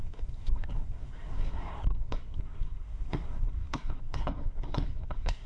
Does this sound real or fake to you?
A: fake